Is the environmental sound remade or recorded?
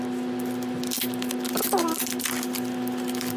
recorded